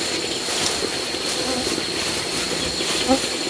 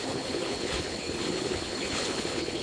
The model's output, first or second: second